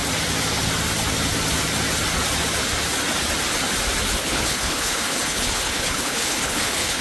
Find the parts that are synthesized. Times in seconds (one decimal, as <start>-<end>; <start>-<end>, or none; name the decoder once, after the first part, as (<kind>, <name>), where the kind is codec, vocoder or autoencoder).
4.2-7.0 (codec, HILCodec)